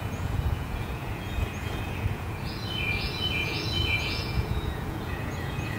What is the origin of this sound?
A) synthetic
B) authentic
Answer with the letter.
A